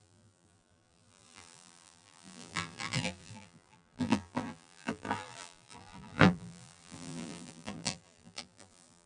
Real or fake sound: fake